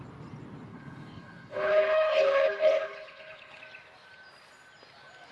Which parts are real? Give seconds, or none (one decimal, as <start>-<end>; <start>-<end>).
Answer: 0.0-0.7; 3.6-5.3